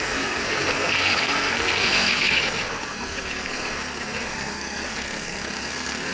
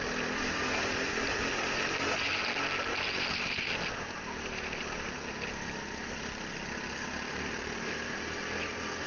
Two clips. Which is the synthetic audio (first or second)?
first